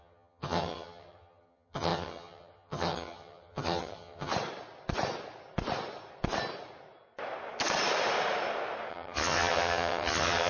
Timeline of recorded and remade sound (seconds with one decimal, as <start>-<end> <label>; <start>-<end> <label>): 0.0-4.3 remade; 4.3-8.9 recorded; 8.9-10.5 remade